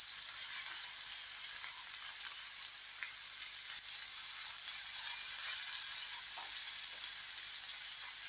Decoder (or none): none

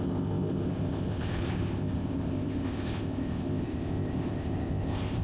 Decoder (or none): codec, ZipCodec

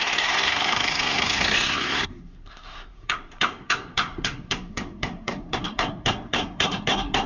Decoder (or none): codec, SNAC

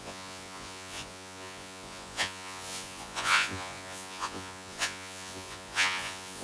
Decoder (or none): vocoder, Vocos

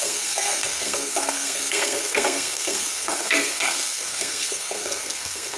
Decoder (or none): codec, SNAC